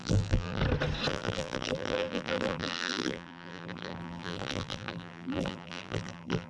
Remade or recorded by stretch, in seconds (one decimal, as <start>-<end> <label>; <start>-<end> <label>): 0.0-0.6 remade; 0.6-1.1 recorded; 1.1-6.5 remade